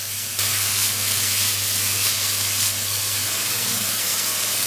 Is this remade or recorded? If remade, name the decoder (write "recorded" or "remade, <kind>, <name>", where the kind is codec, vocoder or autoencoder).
remade, codec, SNAC